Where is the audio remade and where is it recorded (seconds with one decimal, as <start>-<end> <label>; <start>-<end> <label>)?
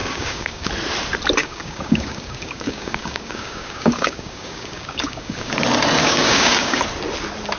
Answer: 0.0-0.7 remade; 0.7-1.4 recorded; 1.4-5.5 remade; 5.5-6.0 recorded; 6.0-6.8 remade; 6.8-7.6 recorded